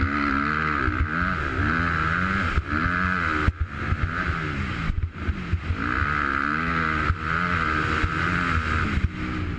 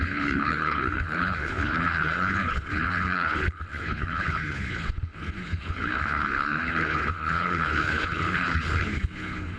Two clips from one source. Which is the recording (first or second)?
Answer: first